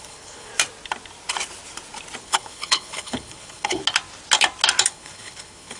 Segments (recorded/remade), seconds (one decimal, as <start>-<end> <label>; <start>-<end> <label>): 0.0-0.5 remade; 0.5-2.2 recorded; 2.2-3.8 remade; 3.8-4.9 recorded; 4.9-5.8 remade